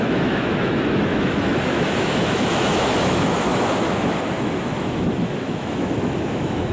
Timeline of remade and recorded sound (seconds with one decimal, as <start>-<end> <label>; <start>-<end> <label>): 0.0-6.7 remade